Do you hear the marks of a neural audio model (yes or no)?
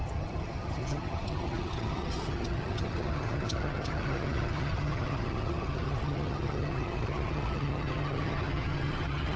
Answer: yes